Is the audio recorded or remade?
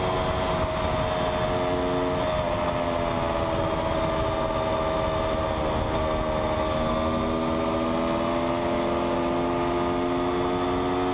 recorded